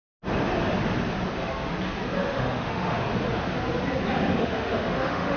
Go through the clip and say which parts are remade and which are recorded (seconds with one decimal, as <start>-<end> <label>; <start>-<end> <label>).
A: 0.0-2.2 recorded; 2.2-3.0 remade; 3.0-4.4 recorded; 4.4-5.4 remade